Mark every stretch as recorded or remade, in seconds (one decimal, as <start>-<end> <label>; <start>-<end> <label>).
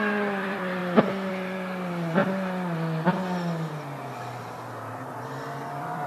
0.0-0.8 remade; 0.8-1.3 recorded; 1.3-2.2 remade; 2.2-5.1 recorded; 5.1-6.1 remade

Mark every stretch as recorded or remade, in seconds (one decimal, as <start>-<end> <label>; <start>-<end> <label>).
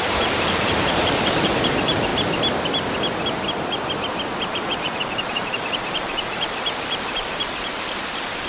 0.0-2.1 remade; 2.1-4.5 recorded; 4.5-8.5 remade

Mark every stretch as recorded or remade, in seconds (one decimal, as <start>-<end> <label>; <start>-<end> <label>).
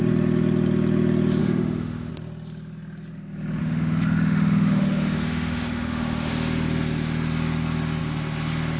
0.0-1.4 recorded; 1.4-2.1 remade; 2.1-3.6 recorded; 3.6-6.3 remade; 6.3-8.8 recorded